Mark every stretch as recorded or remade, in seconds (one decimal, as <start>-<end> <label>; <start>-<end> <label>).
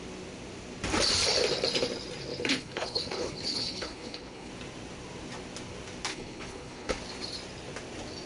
0.0-2.3 recorded; 2.3-4.5 remade; 4.5-6.1 recorded; 6.1-7.0 remade; 7.0-8.3 recorded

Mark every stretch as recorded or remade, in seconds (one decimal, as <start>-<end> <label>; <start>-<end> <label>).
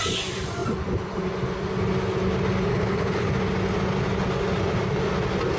0.0-2.7 recorded; 2.7-3.3 remade; 3.3-5.6 recorded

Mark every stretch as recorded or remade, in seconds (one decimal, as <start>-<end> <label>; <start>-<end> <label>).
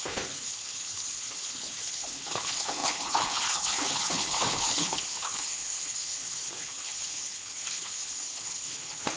0.0-9.2 remade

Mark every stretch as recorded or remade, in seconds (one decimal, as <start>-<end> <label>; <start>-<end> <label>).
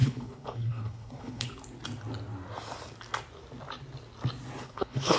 0.0-1.5 remade; 1.5-4.6 recorded; 4.6-5.2 remade